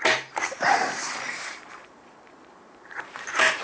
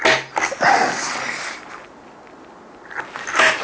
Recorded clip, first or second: second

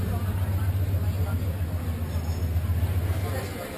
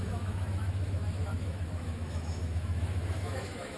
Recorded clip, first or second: first